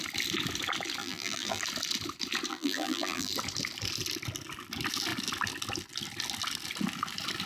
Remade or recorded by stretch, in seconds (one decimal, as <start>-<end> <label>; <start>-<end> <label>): 0.0-1.0 recorded; 1.0-1.6 remade; 1.6-2.5 recorded; 2.5-3.3 remade; 3.3-7.5 recorded